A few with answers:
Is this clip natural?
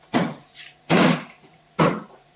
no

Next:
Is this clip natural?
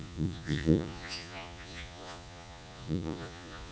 no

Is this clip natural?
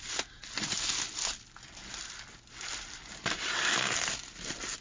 yes